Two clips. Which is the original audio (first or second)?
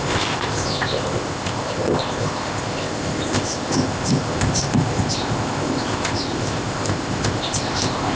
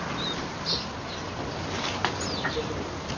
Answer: second